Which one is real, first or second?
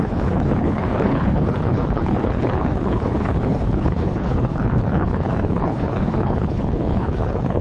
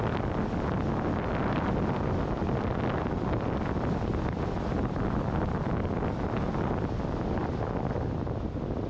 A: second